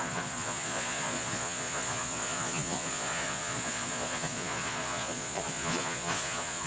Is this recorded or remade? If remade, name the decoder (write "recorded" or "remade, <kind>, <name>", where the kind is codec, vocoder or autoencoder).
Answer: remade, vocoder, Vocos